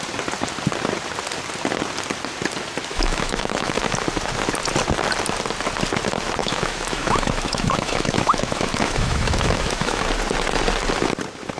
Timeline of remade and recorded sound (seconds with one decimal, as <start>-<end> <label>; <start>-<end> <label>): 0.0-2.9 recorded; 2.9-3.8 remade; 3.8-6.4 recorded; 6.4-10.0 remade; 10.0-11.6 recorded

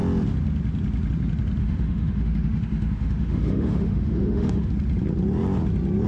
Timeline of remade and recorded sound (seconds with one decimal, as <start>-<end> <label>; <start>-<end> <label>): 0.0-1.6 recorded; 1.6-4.7 remade; 4.7-6.1 recorded

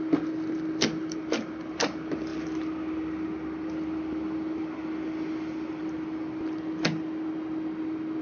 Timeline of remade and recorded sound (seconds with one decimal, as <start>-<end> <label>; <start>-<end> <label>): 0.0-8.2 recorded

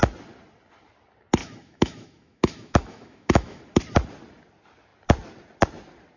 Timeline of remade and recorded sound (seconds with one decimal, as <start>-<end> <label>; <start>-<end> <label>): 0.0-1.4 recorded; 1.4-3.6 remade; 3.6-6.2 recorded